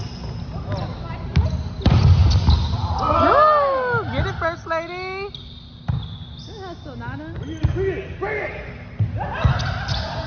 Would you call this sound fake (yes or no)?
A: no